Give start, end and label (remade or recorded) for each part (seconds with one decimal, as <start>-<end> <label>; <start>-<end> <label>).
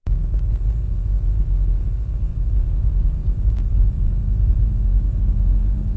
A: 0.0-2.3 recorded; 2.3-4.1 remade; 4.1-6.0 recorded